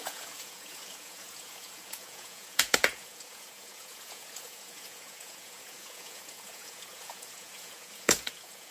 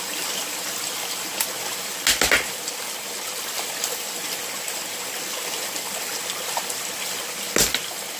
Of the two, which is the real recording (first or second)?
second